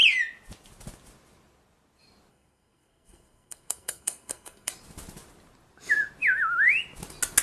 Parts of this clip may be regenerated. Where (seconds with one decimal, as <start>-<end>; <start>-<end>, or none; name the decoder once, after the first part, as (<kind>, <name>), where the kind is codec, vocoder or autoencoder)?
2.3-4.7 (codec, SNAC)